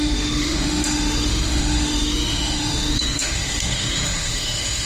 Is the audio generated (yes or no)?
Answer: yes